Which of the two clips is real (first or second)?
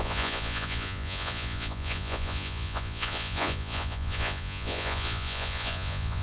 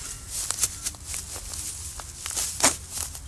second